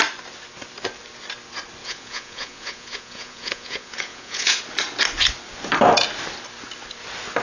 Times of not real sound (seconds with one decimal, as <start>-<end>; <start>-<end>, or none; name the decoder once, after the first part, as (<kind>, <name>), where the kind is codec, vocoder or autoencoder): 1.8-4.6 (vocoder, Vocos)